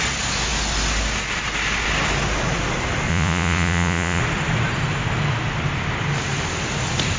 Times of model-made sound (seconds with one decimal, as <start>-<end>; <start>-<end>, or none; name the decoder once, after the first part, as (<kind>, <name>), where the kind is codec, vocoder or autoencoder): 3.1-4.2 (vocoder, Vocos)

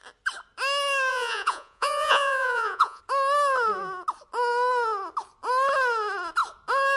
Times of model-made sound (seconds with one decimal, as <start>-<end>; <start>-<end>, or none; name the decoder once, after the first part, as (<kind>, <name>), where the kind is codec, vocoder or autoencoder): 1.1-3.0 (vocoder, Vocos)

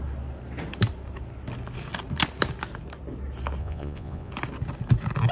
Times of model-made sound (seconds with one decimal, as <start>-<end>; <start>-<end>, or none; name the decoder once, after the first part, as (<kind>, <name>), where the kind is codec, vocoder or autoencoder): 3.6-4.3 (vocoder, Vocos)

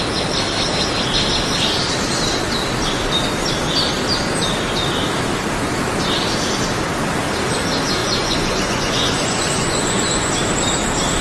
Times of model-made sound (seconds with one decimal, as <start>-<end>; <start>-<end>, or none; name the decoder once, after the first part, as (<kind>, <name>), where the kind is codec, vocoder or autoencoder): 8.0-10.3 (vocoder, Vocos)

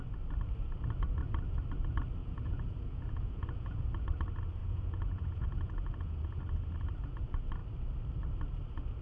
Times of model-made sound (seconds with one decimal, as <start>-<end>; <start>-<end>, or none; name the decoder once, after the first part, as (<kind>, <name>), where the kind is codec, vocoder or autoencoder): 2.2-3.8 (vocoder, Vocos); 4.6-6.4

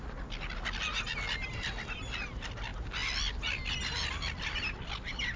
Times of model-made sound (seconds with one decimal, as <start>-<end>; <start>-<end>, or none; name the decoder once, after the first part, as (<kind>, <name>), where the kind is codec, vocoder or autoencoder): none

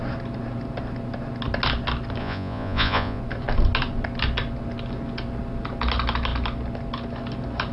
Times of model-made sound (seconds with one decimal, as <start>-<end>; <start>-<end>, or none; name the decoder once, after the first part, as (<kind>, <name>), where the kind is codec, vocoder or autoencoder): 2.2-3.2 (vocoder, Vocos)